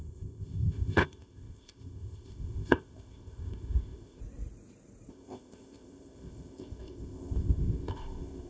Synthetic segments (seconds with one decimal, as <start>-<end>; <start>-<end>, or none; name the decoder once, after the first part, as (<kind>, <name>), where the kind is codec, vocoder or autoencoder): 0.0-4.2 (codec, ZipCodec); 5.1-8.5